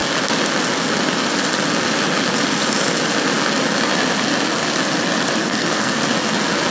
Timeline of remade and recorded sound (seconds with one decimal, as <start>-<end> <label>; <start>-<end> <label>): 0.0-5.4 recorded; 5.4-6.0 remade; 6.0-6.7 recorded